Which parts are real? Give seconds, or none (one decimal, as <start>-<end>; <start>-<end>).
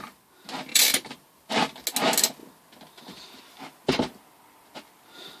0.0-0.7; 1.5-5.4